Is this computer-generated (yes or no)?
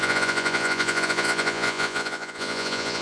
yes